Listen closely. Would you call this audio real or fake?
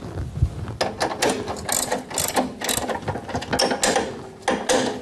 real